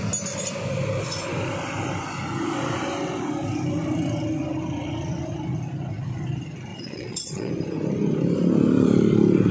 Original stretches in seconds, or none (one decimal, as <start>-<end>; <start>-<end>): 0.0-6.7; 7.5-9.5